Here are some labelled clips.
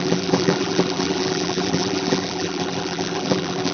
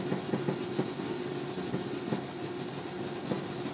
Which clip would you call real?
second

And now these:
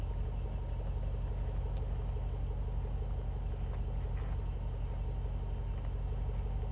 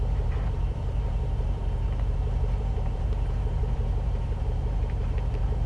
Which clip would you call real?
first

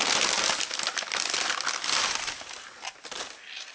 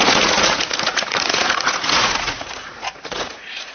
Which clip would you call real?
first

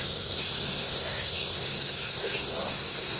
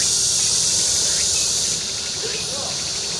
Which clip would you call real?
second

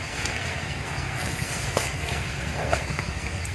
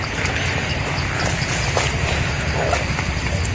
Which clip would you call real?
second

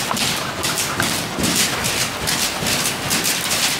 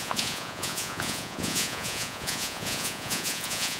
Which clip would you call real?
first